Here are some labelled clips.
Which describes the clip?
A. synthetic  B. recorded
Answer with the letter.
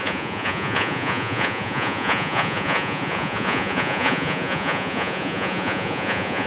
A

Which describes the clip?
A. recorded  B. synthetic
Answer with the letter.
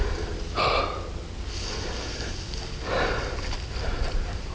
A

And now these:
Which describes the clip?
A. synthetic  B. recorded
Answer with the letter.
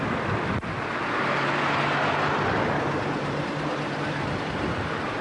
B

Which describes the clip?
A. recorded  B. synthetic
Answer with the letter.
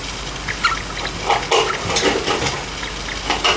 A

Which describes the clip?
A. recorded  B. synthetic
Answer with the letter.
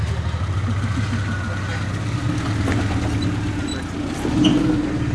A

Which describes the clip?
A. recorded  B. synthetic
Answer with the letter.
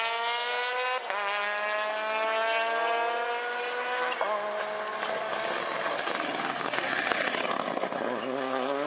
A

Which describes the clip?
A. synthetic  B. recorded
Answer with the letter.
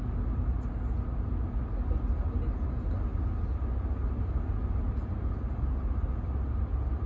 B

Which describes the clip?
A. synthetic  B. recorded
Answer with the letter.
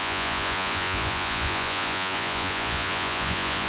A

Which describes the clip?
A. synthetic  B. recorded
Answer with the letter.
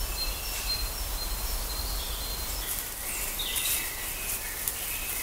B